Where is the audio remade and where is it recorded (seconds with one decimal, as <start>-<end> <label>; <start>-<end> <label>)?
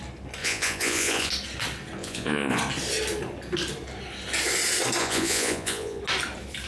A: 0.0-0.4 recorded; 0.4-1.3 remade; 1.3-2.0 recorded; 2.0-2.6 remade; 2.6-5.0 recorded; 5.0-6.0 remade; 6.0-6.7 recorded